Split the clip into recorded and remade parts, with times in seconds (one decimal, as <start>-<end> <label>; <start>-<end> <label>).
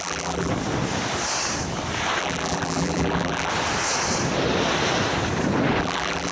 0.0-0.5 remade; 0.5-2.2 recorded; 2.2-3.5 remade; 3.5-5.8 recorded; 5.8-6.3 remade